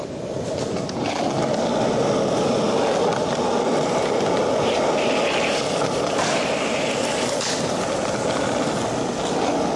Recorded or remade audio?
recorded